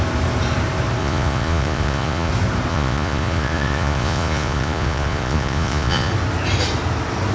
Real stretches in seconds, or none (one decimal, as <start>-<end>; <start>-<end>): 0.0-1.0; 2.3-2.7; 6.1-7.3